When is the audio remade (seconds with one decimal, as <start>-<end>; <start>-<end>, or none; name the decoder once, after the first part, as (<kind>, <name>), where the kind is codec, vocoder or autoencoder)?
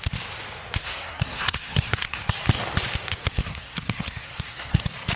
0.8-2.2 (codec, SNAC); 3.2-4.8